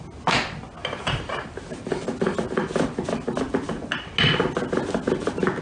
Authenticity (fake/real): real